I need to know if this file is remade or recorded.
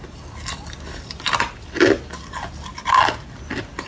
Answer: recorded